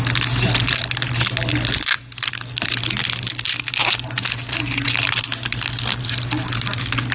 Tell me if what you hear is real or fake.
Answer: real